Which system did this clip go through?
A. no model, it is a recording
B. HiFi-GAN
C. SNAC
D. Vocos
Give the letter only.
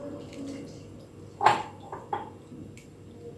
A